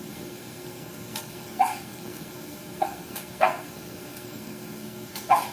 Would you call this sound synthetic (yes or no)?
yes